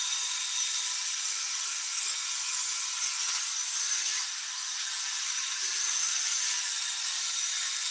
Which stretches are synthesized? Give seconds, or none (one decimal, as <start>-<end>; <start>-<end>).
4.6-6.7